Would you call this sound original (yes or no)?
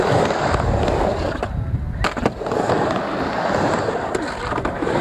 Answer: yes